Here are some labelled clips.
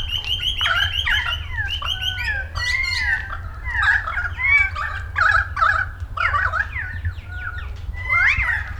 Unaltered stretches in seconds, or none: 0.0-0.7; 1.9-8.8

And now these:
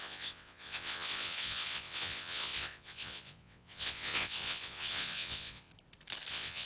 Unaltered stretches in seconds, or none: 5.7-6.3

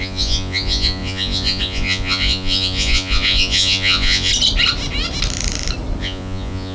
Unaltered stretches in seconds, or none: 4.3-6.0

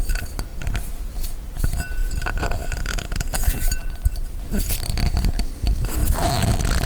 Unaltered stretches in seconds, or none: 0.0-6.9

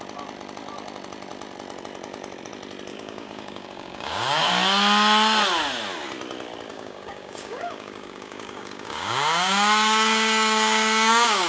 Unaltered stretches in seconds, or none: 0.0-2.9; 4.5-6.7

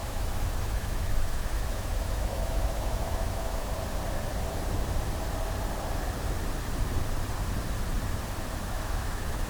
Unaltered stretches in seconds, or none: 3.7-8.6

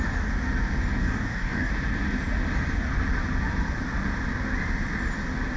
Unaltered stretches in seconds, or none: 0.0-1.0; 1.7-5.6